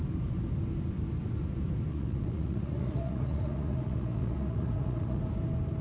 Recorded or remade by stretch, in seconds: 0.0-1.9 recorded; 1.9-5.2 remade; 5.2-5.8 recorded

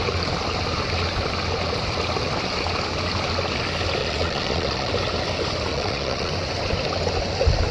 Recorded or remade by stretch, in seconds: 0.0-4.0 recorded; 4.0-4.9 remade; 4.9-5.7 recorded; 5.7-6.3 remade; 6.3-7.7 recorded

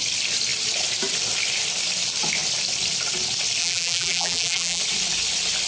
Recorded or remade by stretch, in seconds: 0.0-3.6 recorded; 3.6-4.8 remade; 4.8-5.7 recorded